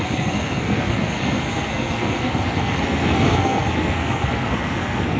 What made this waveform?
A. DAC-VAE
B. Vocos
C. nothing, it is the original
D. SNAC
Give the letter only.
D